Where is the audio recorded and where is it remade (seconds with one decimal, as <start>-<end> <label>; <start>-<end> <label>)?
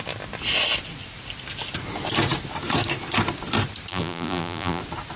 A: 0.0-3.9 recorded; 3.9-4.8 remade; 4.8-5.2 recorded